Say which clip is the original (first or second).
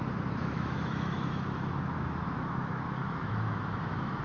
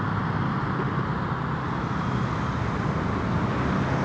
second